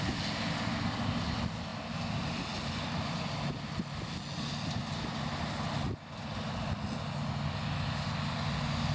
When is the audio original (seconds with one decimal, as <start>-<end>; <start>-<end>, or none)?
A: 0.0-8.9